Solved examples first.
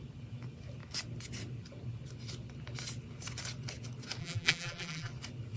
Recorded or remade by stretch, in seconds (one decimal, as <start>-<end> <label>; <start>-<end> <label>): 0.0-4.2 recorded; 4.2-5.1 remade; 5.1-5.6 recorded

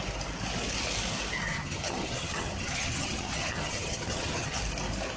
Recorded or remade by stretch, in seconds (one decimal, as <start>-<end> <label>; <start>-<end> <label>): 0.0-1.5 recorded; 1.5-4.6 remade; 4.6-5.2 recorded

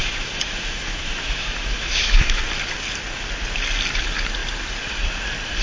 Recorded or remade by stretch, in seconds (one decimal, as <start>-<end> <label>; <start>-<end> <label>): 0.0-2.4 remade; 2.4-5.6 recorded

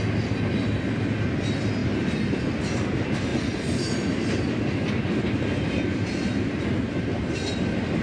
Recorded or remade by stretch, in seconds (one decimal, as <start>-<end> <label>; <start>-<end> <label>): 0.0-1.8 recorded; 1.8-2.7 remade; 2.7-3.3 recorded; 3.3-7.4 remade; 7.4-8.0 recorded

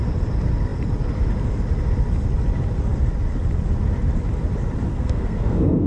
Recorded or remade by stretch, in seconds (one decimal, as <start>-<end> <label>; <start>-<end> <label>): 0.0-4.9 recorded; 4.9-5.9 remade